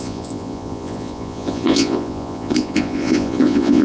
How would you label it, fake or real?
fake